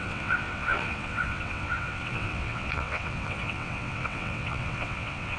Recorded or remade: remade